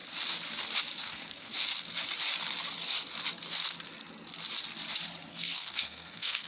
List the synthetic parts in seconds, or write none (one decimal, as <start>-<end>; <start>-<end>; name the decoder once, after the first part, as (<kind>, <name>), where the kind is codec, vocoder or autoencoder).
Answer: 1.0-1.5 (codec, SNAC); 5.3-6.5